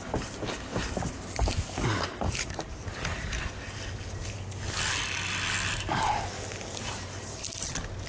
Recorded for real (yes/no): yes